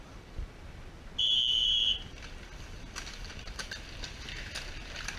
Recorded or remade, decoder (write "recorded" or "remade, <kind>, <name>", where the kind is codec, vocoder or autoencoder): recorded